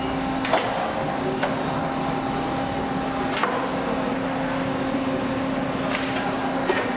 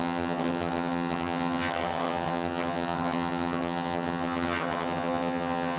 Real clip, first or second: first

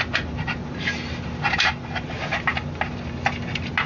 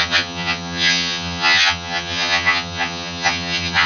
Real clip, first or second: first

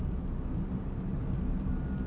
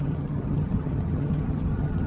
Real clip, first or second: first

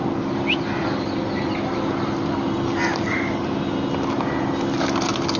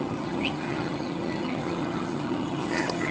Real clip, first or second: first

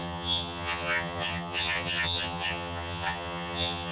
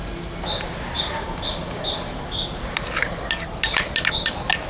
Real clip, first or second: second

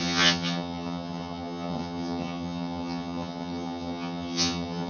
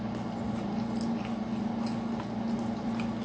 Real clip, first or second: second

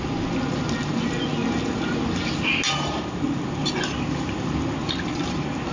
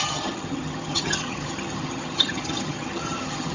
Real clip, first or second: first